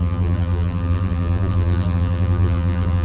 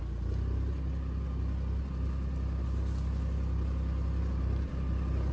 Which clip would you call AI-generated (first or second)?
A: first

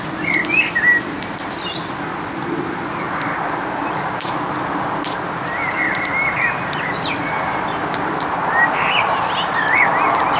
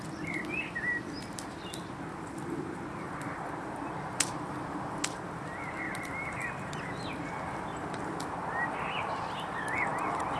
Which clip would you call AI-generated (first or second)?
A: second